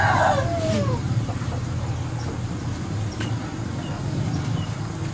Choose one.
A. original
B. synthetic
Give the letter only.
A